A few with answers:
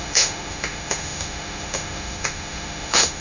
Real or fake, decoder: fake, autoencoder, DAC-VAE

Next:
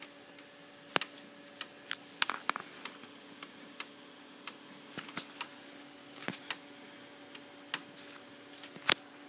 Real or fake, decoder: real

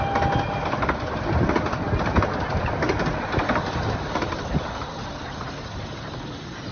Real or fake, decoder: real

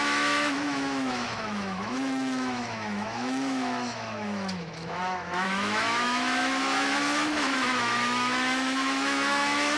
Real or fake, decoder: fake, autoencoder, DAC-VAE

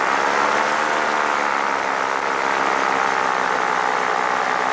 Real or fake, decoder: real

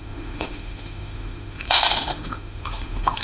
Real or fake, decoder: fake, autoencoder, DAC-VAE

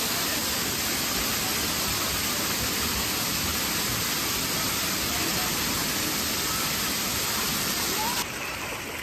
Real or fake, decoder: real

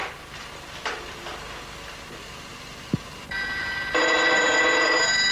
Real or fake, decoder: real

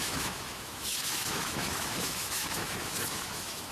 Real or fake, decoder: fake, autoencoder, DAC-VAE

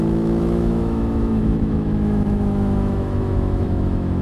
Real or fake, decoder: fake, autoencoder, DAC-VAE